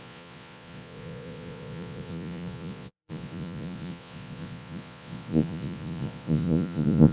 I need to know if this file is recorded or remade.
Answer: remade